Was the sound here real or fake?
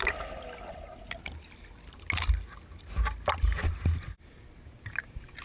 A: real